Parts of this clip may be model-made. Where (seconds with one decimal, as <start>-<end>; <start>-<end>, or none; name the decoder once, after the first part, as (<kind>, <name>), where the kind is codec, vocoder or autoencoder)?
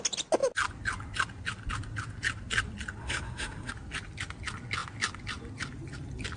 3.0-3.7 (codec, SNAC)